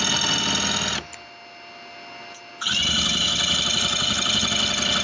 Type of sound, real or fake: real